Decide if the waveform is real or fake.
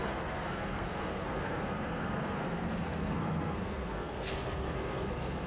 fake